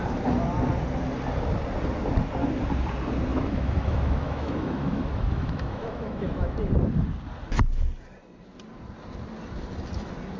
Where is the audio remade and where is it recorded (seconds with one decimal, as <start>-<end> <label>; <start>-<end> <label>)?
0.0-3.3 recorded; 3.3-6.7 remade; 6.7-10.4 recorded